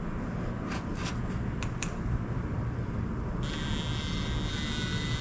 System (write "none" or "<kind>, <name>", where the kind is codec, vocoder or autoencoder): none